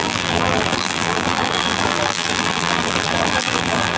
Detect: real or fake fake